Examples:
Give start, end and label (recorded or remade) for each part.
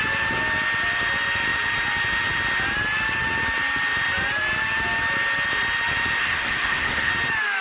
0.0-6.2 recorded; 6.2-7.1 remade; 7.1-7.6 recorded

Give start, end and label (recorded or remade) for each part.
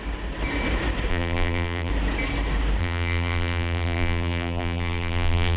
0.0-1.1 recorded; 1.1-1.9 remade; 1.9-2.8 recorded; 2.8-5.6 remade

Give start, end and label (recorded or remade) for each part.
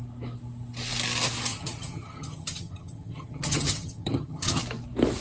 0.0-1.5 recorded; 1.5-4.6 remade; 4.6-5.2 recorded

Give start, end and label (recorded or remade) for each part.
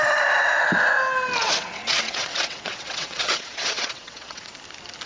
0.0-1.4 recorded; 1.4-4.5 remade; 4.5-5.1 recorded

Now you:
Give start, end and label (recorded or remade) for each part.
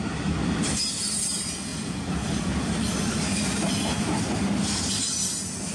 0.0-5.7 recorded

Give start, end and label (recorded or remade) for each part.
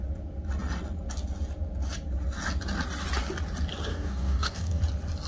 0.0-3.9 recorded; 3.9-4.8 remade; 4.8-5.3 recorded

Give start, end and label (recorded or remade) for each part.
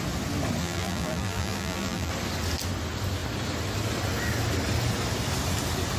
0.0-0.6 recorded; 0.6-2.1 remade; 2.1-6.0 recorded